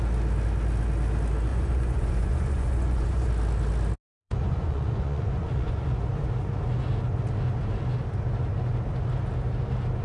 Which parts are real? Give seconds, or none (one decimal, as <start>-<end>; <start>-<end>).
0.0-1.5; 3.3-4.2; 6.0-10.0